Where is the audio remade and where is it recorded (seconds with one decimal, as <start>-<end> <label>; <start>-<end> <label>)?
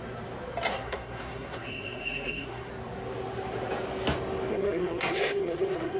0.0-0.7 recorded; 0.7-2.7 remade; 2.7-4.5 recorded; 4.5-6.0 remade